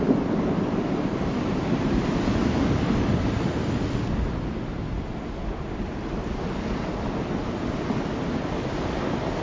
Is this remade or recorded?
recorded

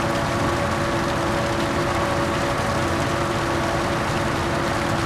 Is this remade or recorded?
recorded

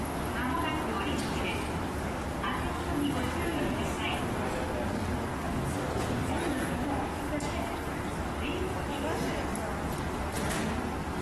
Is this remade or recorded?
recorded